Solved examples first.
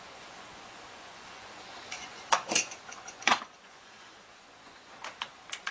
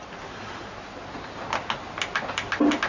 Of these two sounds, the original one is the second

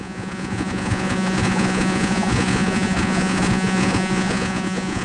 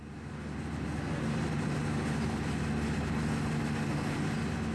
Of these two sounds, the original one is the second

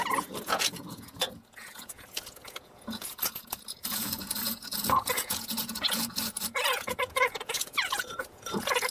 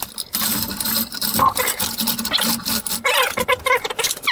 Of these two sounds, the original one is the second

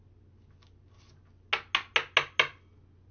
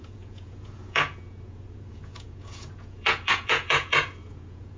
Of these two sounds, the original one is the first